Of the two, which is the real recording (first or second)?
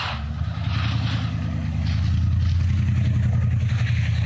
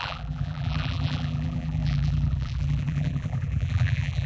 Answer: first